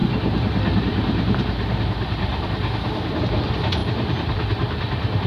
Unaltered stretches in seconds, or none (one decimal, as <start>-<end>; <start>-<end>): 3.2-3.8